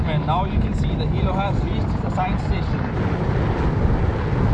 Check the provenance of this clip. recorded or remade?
recorded